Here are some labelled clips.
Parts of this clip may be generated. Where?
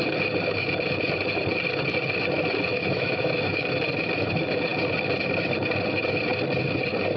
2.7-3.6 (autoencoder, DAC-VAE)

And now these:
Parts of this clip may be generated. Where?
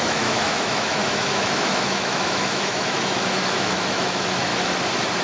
0.0-4.5 (autoencoder, DAC-VAE)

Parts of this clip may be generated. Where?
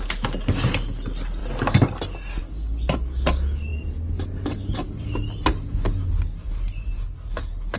none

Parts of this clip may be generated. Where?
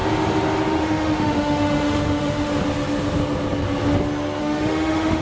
0.7-2.5 (autoencoder, DAC-VAE); 4.4-5.2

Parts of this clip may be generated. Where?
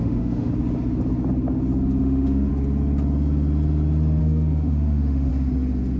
0.0-0.5 (autoencoder, DAC-VAE); 2.0-2.5; 4.2-5.3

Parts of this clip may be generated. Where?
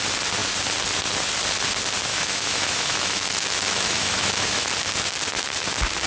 2.1-4.7 (autoencoder, DAC-VAE)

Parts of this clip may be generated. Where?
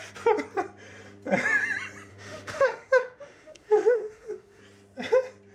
2.1-4.6 (autoencoder, DAC-VAE)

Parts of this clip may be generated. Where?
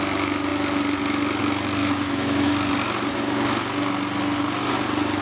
1.8-2.5 (autoencoder, DAC-VAE)